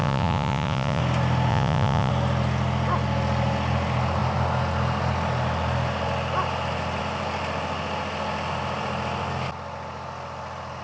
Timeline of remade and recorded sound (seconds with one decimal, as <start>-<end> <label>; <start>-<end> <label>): 0.0-1.0 remade; 1.0-1.5 recorded; 1.5-2.1 remade; 2.1-10.8 recorded